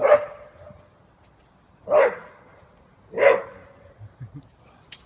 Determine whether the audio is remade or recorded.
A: recorded